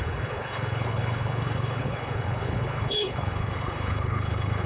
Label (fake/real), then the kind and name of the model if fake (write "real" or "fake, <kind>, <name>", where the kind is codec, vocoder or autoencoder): fake, codec, HILCodec